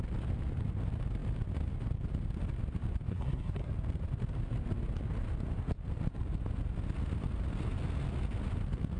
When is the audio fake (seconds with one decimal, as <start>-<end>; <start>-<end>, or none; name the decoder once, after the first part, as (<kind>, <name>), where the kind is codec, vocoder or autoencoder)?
3.1-3.7 (codec, SNAC)